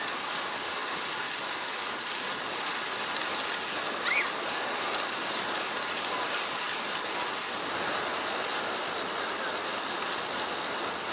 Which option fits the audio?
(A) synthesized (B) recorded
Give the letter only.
B